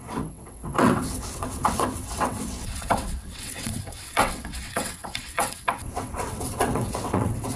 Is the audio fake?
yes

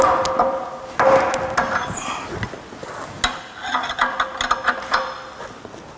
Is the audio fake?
no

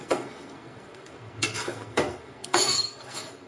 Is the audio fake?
yes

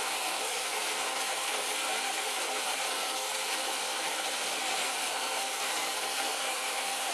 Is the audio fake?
yes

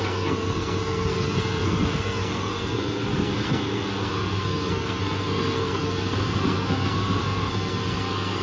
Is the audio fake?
yes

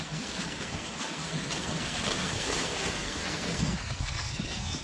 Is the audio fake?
yes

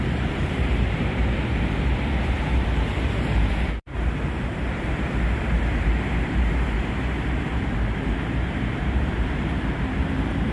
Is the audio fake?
yes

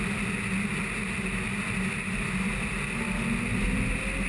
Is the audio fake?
no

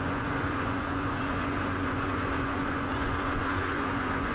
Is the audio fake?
yes